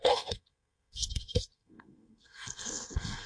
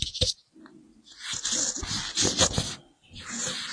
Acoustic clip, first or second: second